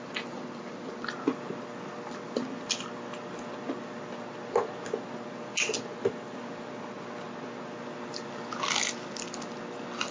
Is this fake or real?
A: real